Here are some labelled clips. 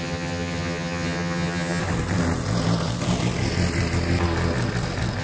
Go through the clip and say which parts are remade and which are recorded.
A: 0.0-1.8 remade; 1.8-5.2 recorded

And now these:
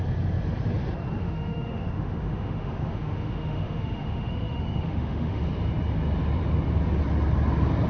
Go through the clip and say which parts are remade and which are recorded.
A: 0.0-1.2 recorded; 1.2-5.4 remade; 5.4-7.9 recorded

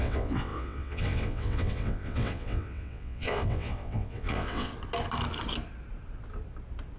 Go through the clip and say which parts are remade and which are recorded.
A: 0.0-4.7 remade; 4.7-7.0 recorded